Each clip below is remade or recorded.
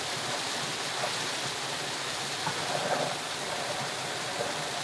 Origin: recorded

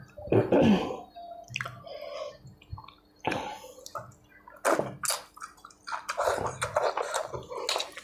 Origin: recorded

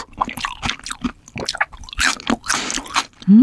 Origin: recorded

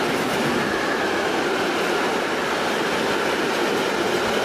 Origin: recorded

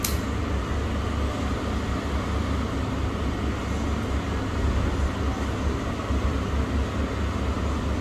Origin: recorded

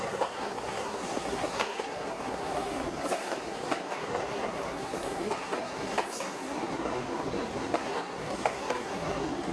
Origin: remade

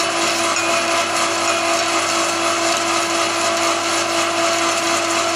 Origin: recorded